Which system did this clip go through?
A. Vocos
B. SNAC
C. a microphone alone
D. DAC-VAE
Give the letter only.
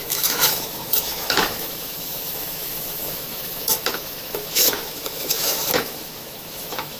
D